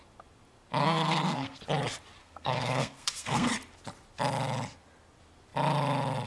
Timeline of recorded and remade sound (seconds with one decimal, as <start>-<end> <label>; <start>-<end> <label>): 0.0-0.8 recorded; 0.8-1.6 remade; 1.6-2.2 recorded; 2.2-3.5 remade; 3.5-6.3 recorded